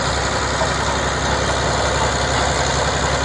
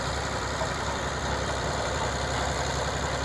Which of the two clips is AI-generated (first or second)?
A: second